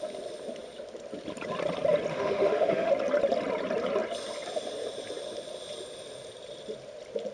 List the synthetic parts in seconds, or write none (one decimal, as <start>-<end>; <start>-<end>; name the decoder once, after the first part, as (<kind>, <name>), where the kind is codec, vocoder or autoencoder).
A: 2.1-2.9 (autoencoder, DAC-VAE)